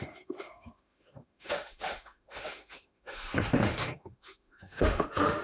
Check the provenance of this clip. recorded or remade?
remade